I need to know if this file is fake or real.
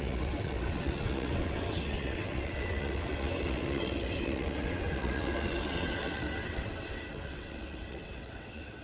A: fake